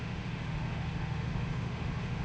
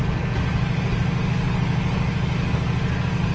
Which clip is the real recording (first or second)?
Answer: second